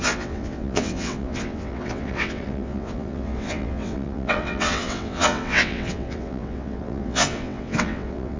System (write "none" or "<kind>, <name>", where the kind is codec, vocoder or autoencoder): vocoder, WaveNeXt